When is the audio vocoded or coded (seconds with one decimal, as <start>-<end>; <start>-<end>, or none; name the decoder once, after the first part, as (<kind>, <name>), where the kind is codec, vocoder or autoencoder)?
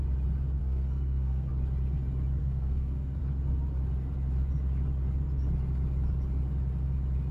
0.6-1.5 (codec, SNAC); 2.4-3.2